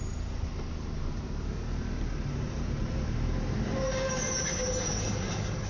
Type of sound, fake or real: fake